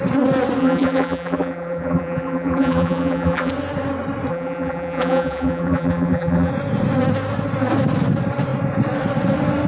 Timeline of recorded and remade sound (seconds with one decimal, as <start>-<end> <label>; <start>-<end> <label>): 0.0-0.6 recorded; 0.6-3.5 remade; 3.5-4.3 recorded; 4.3-6.5 remade; 6.5-9.7 recorded